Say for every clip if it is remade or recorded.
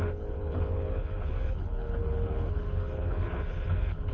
remade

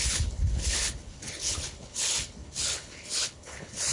remade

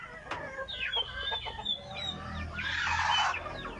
recorded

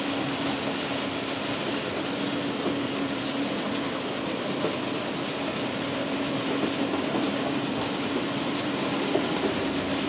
recorded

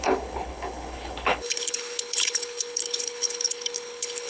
remade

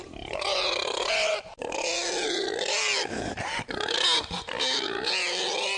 recorded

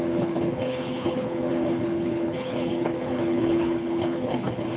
remade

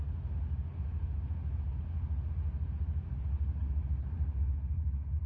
recorded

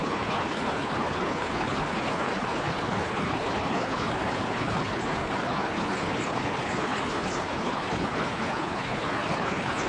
remade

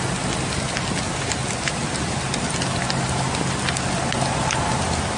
recorded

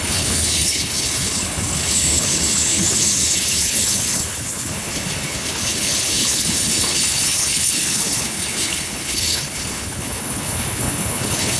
remade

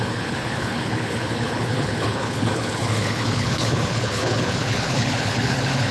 remade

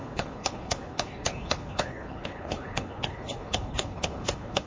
remade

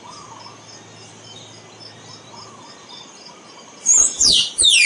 recorded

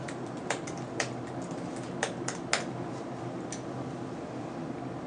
recorded